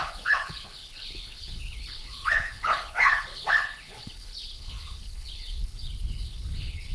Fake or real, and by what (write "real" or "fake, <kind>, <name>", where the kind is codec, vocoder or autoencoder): fake, codec, HILCodec